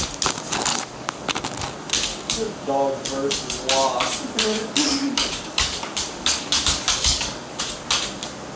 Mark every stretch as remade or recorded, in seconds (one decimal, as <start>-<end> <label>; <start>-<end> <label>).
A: 0.0-0.7 recorded; 0.7-1.6 remade; 1.6-2.1 recorded; 2.1-2.7 remade; 2.7-4.5 recorded; 4.5-7.6 remade; 7.6-8.6 recorded